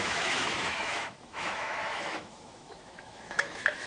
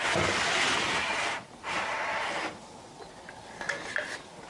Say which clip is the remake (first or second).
first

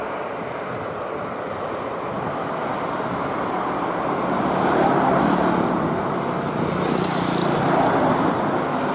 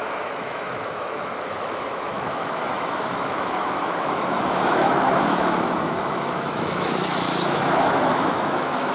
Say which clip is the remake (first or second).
second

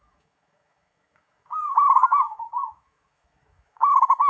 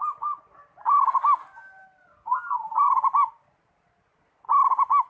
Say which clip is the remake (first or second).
first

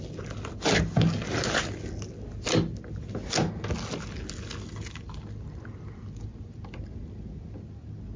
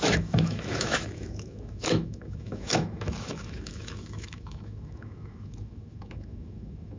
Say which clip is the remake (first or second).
second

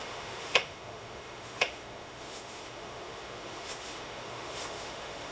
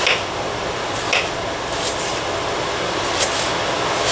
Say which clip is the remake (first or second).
first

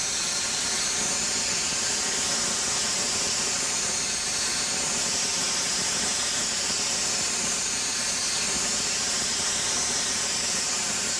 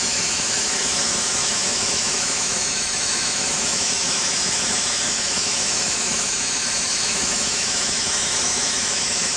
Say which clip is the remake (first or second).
second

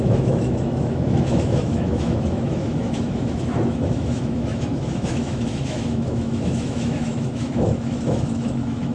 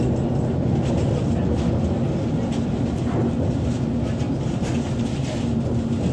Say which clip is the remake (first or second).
first